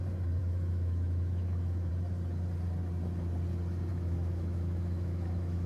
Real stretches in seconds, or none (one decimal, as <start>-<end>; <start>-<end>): 0.0-0.4; 1.9-3.9